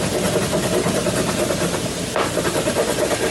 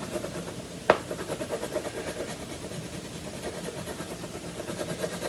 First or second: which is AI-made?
second